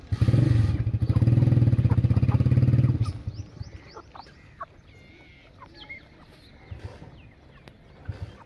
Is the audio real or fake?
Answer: real